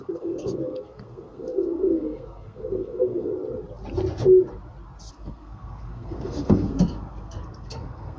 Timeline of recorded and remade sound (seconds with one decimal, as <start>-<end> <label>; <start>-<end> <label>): 0.0-3.3 remade; 3.3-5.1 recorded; 5.1-8.2 remade